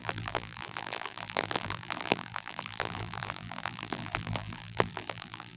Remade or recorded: remade